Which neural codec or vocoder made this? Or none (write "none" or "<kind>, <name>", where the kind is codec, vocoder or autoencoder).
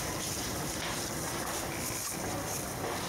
none